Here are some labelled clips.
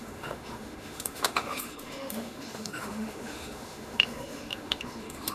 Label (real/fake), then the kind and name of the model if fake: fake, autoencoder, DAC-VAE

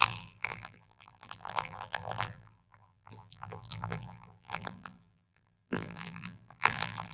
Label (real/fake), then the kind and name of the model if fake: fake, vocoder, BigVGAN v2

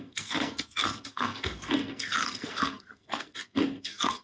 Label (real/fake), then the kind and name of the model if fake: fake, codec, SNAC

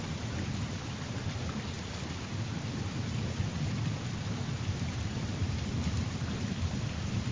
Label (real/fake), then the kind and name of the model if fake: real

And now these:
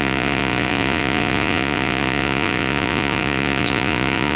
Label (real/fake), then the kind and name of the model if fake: fake, vocoder, Vocos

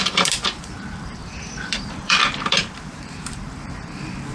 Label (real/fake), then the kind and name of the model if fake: fake, vocoder, BigVGAN v2